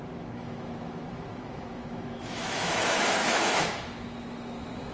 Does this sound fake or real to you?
fake